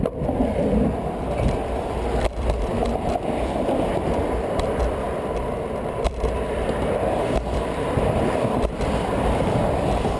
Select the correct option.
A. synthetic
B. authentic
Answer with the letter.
A